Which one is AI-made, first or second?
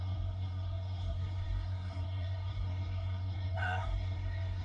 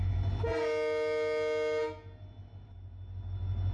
first